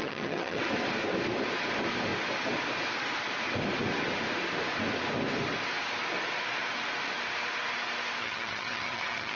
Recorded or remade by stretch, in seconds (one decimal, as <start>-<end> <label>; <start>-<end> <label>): 0.0-0.6 remade; 0.6-8.2 recorded; 8.2-9.4 remade